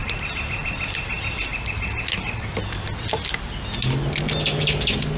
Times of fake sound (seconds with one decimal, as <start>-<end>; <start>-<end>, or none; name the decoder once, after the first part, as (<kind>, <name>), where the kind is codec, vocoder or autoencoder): none